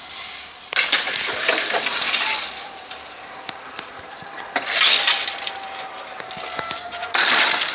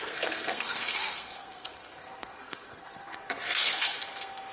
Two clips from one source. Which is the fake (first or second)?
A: second